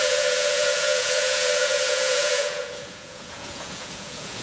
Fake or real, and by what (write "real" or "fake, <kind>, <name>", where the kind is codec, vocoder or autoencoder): fake, vocoder, Vocos